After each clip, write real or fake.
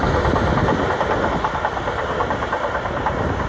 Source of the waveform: real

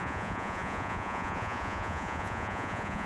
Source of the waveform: fake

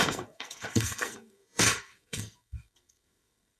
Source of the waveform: fake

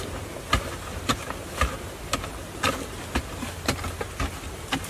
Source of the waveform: real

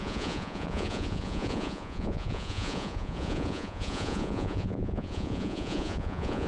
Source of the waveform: fake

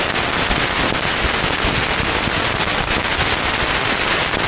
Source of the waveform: real